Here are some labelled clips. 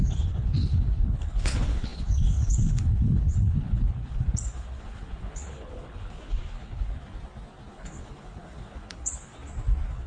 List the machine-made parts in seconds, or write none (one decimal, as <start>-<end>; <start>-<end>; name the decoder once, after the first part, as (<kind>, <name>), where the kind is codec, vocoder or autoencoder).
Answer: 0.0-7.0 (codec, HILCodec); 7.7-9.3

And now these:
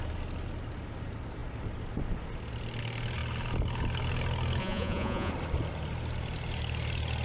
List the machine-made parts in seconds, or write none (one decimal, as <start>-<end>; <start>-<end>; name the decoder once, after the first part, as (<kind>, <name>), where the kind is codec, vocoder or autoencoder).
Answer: 4.6-5.3 (vocoder, Vocos)

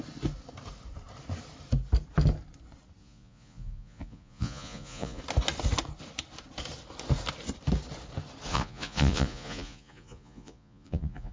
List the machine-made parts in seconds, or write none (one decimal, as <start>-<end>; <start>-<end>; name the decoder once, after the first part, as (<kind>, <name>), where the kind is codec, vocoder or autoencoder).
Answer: 3.0-5.2 (vocoder, Vocos); 8.5-11.3

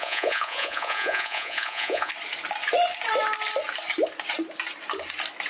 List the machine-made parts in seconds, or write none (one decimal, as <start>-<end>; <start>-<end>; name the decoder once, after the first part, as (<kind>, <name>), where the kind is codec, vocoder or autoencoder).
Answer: 0.0-2.1 (vocoder, Vocos)

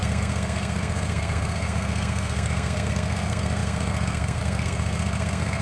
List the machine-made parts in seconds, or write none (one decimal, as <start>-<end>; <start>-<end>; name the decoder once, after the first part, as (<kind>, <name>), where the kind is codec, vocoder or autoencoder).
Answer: 0.0-5.6 (codec, SNAC)

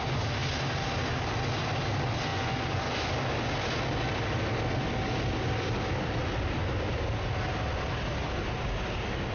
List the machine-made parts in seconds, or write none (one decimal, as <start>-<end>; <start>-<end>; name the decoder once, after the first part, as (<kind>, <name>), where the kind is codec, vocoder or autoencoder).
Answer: 2.3-2.9 (vocoder, Vocos)

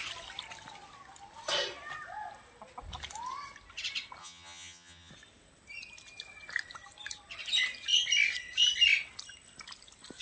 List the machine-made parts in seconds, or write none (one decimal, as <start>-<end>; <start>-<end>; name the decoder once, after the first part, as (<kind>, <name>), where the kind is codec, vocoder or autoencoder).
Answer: 4.2-5.1 (vocoder, HiFi-GAN)